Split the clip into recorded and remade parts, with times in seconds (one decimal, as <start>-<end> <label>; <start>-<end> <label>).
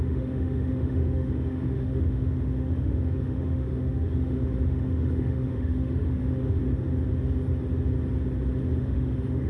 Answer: 0.0-6.6 remade; 6.6-8.8 recorded; 8.8-9.5 remade